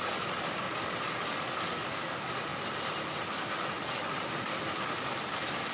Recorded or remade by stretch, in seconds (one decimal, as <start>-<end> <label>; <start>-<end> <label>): 0.0-2.5 recorded; 2.5-5.7 remade

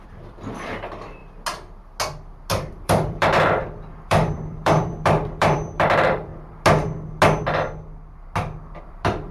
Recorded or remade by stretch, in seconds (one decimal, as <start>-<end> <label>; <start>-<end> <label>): 0.0-1.2 remade; 1.2-2.7 recorded; 2.7-6.3 remade; 6.3-8.8 recorded; 8.8-9.3 remade

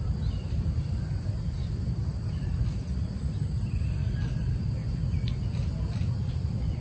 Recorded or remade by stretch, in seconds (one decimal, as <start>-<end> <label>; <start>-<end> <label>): 0.0-4.8 remade; 4.8-6.1 recorded; 6.1-6.8 remade

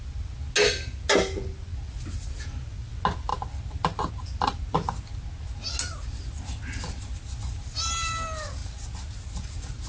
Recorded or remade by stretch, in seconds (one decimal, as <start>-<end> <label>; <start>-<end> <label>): 0.0-9.9 recorded

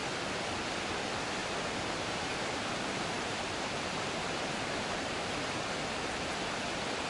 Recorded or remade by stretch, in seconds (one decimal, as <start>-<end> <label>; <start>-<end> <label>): 0.0-1.4 recorded; 1.4-5.7 remade; 5.7-7.1 recorded

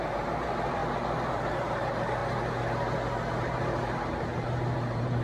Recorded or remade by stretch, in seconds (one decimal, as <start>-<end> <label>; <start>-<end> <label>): 0.0-0.8 remade; 0.8-1.3 recorded; 1.3-2.2 remade; 2.2-3.2 recorded; 3.2-5.2 remade

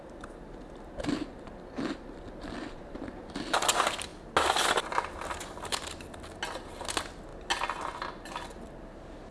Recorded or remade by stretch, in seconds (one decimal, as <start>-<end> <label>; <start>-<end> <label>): 0.0-9.3 recorded